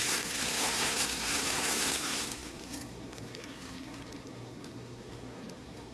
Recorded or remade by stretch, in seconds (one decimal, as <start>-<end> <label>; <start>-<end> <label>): 0.0-5.9 remade